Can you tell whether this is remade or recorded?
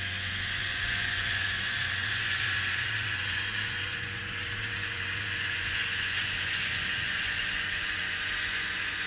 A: remade